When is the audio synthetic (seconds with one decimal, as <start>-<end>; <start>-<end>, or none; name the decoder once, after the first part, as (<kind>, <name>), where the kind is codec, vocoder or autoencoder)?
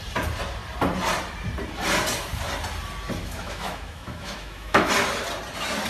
3.2-4.9 (autoencoder, DAC-VAE)